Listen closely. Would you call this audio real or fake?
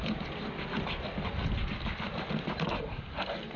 real